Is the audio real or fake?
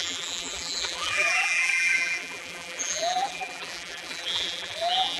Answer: fake